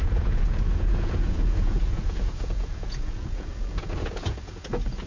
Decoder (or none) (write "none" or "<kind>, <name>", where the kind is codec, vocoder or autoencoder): vocoder, Vocos